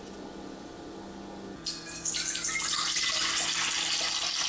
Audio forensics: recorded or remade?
recorded